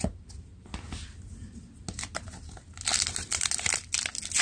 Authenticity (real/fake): real